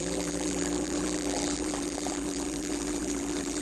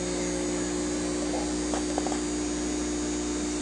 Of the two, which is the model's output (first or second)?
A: first